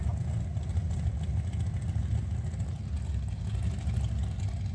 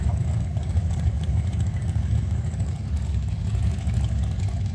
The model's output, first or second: second